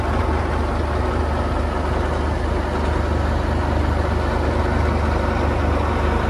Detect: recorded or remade recorded